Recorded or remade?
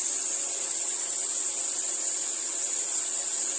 remade